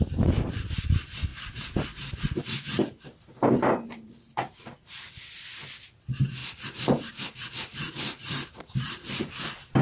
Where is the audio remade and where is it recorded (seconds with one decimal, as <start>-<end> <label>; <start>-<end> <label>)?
0.0-1.3 recorded; 1.3-5.1 remade; 5.1-6.4 recorded; 6.4-7.1 remade; 7.1-7.7 recorded; 7.7-9.3 remade; 9.3-9.8 recorded